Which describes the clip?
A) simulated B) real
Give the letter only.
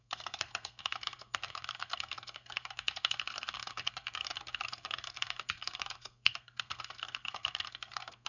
A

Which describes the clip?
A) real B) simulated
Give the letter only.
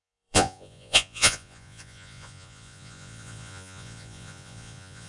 B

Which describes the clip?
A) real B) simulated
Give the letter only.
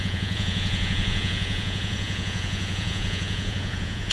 B